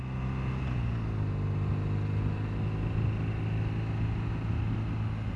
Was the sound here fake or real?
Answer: real